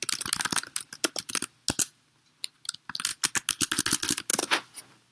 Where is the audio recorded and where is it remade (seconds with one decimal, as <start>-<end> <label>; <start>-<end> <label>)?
0.0-5.1 recorded